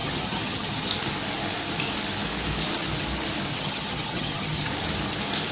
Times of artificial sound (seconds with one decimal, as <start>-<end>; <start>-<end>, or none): 0.0-0.9; 3.5-4.7